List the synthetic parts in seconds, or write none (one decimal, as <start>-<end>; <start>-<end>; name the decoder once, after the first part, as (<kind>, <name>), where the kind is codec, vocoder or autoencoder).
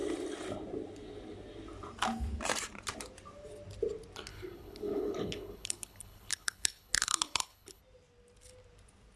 4.3-7.8 (codec, HILCodec)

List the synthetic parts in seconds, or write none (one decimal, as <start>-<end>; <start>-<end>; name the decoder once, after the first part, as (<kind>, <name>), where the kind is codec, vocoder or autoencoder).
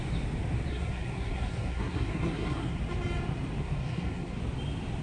0.7-2.8 (codec, SNAC); 3.6-4.4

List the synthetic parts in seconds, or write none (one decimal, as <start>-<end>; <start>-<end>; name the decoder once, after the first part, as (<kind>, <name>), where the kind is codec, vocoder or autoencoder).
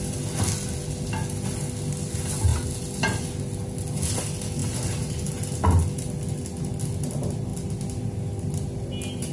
4.6-5.3 (vocoder, BigVGAN v2)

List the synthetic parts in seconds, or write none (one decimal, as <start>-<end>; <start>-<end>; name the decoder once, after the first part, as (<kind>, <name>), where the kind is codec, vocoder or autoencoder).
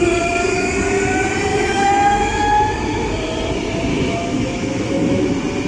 1.5-3.1 (autoencoder, DAC-VAE); 3.9-5.3